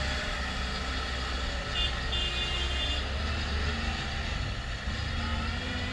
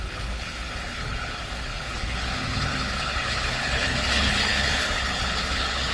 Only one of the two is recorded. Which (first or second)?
first